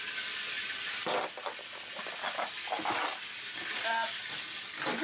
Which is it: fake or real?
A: real